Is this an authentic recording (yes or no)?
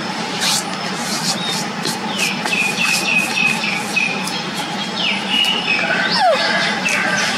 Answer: yes